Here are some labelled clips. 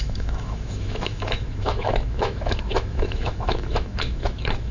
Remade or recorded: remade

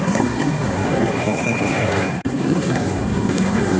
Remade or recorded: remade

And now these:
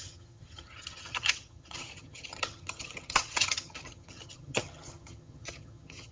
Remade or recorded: remade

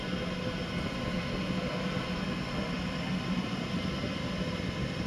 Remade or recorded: recorded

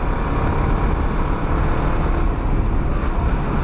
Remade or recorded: recorded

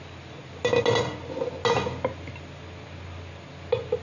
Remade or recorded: recorded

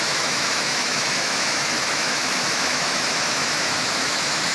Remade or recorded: remade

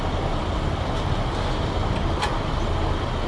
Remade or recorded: recorded